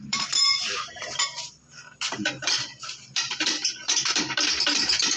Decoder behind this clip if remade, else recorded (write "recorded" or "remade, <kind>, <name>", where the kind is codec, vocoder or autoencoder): remade, vocoder, BigVGAN v2